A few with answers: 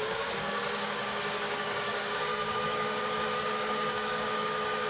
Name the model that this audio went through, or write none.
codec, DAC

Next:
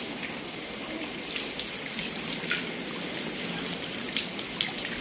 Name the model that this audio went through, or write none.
none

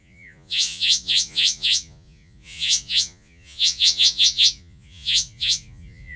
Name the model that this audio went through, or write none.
vocoder, Vocos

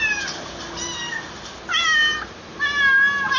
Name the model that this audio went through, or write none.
none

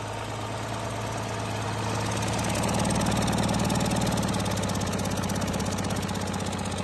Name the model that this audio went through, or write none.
none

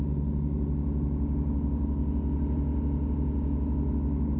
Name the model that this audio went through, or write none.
none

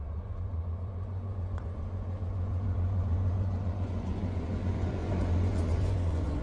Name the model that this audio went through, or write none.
vocoder, Vocos